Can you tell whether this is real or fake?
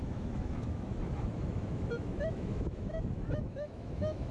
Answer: fake